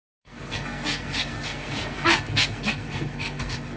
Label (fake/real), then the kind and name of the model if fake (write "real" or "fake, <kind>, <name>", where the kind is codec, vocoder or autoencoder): fake, codec, SNAC